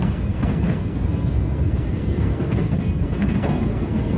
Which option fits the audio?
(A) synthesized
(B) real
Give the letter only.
A